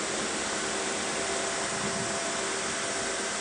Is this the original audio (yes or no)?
yes